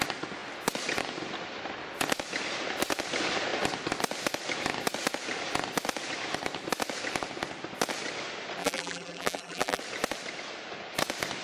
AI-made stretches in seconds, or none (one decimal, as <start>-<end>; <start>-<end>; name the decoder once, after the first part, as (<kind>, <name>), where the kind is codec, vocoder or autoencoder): 8.6-9.8 (vocoder, BigVGAN v2)